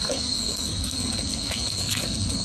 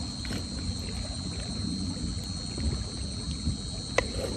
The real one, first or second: second